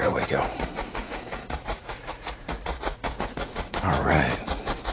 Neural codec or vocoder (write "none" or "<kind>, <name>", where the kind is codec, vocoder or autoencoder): vocoder, Vocos